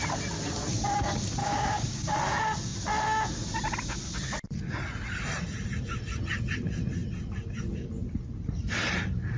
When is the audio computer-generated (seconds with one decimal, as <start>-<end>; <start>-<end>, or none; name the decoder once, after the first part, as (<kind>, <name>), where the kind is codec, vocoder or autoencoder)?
1.4-2.1 (codec, DAC)